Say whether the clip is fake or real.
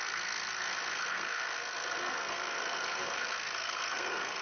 fake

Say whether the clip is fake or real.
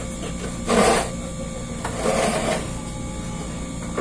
real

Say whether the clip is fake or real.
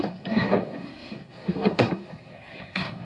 fake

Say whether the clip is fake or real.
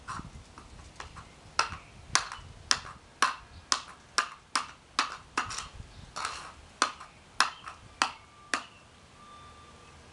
real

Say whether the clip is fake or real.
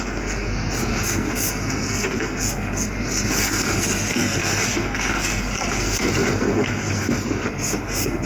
fake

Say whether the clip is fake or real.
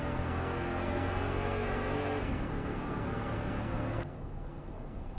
fake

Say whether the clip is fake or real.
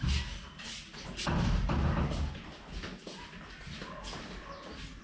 real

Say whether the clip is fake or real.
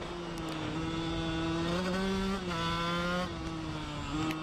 real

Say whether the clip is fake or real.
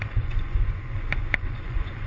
fake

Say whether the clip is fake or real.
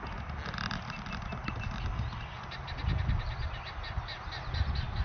real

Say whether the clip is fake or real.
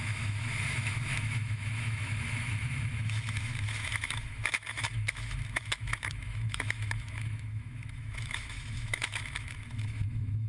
fake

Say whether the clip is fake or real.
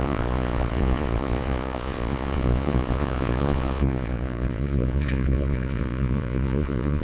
fake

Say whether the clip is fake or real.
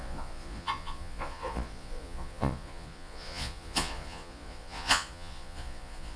fake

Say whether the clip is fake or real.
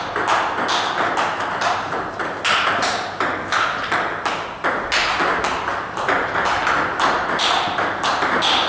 real